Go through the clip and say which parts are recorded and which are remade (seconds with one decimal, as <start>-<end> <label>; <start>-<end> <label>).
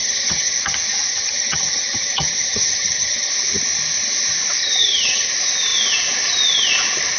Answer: 0.0-0.6 remade; 0.6-1.1 recorded; 1.1-3.3 remade; 3.3-4.6 recorded; 4.6-5.3 remade; 5.3-7.2 recorded